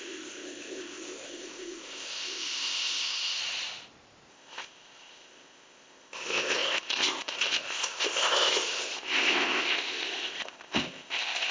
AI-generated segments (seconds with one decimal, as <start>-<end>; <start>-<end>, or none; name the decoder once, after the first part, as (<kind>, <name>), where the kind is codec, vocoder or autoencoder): 0.0-3.4 (codec, ZipCodec); 4.3-11.5